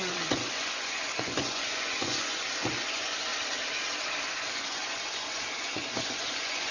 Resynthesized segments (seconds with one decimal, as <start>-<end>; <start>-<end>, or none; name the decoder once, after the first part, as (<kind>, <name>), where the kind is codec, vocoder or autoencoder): 0.0-3.3 (vocoder, Vocos); 4.3-6.7